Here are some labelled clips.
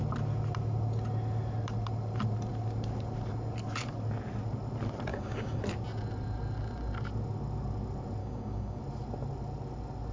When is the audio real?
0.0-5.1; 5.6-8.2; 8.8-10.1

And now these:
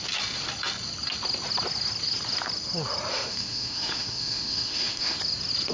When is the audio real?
0.0-3.1; 5.2-5.7

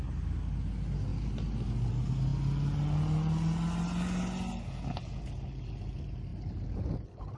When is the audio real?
0.0-7.4

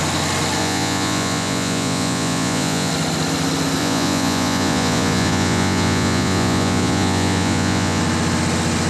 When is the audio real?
0.0-0.6; 2.9-3.8; 8.0-8.9